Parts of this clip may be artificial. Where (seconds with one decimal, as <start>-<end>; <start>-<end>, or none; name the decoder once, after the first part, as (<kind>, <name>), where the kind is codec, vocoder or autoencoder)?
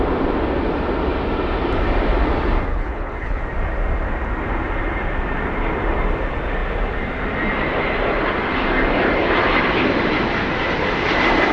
2.7-3.4 (codec, HILCodec)